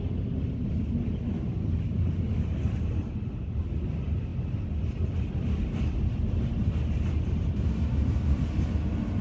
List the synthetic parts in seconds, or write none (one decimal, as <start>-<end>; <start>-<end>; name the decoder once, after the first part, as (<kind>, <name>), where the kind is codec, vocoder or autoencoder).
none